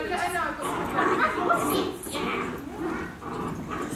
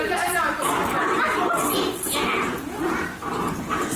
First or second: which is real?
first